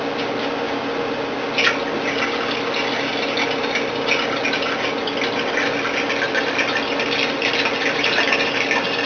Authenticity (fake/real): real